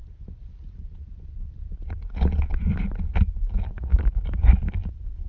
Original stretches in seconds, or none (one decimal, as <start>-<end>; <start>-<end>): 0.0-3.2